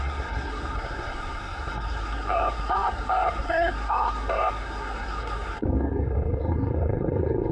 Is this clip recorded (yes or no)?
no